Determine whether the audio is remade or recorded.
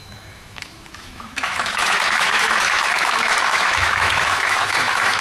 remade